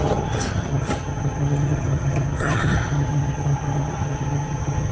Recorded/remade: remade